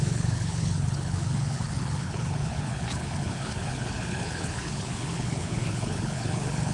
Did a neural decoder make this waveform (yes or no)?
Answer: yes